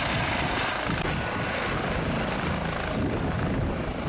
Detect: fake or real real